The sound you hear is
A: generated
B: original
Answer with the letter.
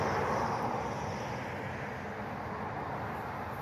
B